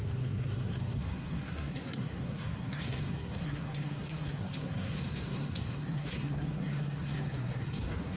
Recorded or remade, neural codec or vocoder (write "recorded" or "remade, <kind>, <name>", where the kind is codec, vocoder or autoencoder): remade, codec, SNAC